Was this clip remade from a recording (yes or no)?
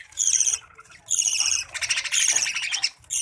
no